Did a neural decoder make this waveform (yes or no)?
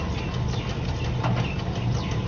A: no